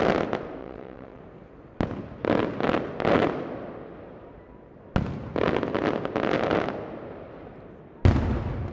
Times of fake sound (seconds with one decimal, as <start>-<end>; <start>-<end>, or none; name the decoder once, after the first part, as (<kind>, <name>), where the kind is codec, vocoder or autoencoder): 0.6-1.2 (vocoder, WaveNeXt)

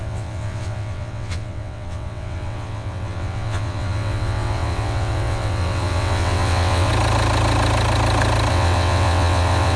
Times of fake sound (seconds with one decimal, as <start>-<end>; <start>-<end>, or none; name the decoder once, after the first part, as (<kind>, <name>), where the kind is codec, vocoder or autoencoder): 0.0-6.9 (vocoder, WaveNeXt); 8.5-9.8

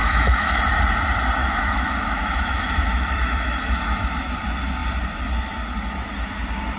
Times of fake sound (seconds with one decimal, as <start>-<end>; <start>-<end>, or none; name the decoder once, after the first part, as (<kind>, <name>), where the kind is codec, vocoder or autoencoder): 0.0-0.6 (autoencoder, DAC-VAE); 1.4-4.3

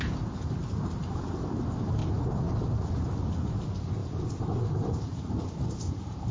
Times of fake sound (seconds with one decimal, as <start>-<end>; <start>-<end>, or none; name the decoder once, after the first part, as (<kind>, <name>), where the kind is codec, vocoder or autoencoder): none

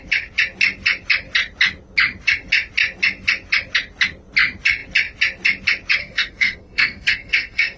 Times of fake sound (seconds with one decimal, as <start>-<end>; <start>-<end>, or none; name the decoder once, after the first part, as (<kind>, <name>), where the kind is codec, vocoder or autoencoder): 6.0-7.8 (codec, SNAC)